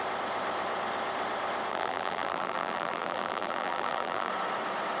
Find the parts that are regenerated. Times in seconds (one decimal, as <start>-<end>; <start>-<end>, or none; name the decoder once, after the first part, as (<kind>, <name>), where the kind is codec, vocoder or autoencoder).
1.7-4.3 (vocoder, BigVGAN v2)

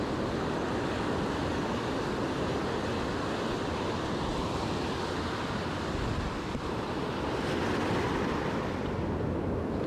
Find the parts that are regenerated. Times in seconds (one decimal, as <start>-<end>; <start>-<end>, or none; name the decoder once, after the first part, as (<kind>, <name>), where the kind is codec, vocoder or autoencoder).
none

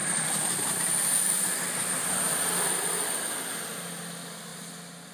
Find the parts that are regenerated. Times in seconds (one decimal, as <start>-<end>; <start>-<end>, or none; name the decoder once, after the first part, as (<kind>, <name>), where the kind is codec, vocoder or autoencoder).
0.0-3.1 (vocoder, BigVGAN v2)

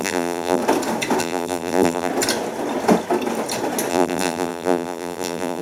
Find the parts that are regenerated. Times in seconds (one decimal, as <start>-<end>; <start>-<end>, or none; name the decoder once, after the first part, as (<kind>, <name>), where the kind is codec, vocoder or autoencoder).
0.0-0.6 (vocoder, BigVGAN v2); 1.2-2.1; 3.9-5.6

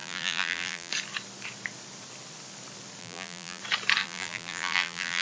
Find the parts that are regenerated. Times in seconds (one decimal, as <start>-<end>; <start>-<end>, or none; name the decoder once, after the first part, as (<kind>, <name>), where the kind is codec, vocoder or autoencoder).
0.0-0.9 (vocoder, BigVGAN v2); 3.0-3.6; 4.0-5.2

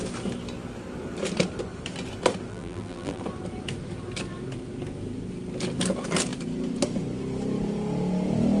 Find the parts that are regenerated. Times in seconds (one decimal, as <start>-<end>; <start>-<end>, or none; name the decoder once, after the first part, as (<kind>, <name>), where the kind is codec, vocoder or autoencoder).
2.5-3.2 (vocoder, BigVGAN v2)